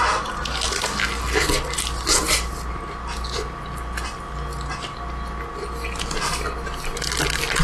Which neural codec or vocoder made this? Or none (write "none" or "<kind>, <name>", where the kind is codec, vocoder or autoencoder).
none